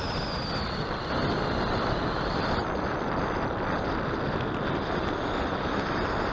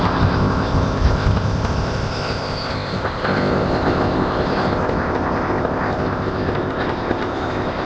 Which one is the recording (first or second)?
first